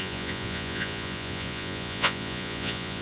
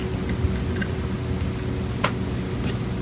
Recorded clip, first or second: second